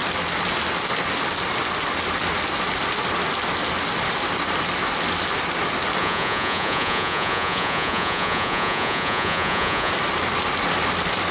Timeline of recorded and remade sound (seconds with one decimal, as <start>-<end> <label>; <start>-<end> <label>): 0.0-6.0 recorded; 6.0-9.9 remade; 9.9-11.3 recorded